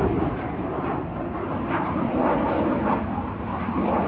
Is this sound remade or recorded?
recorded